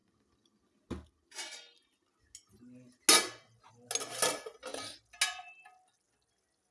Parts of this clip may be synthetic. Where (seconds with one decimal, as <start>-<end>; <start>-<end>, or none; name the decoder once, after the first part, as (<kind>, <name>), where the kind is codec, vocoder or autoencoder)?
none